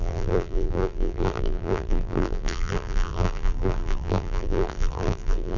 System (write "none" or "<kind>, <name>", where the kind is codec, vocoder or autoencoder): vocoder, BigVGAN v2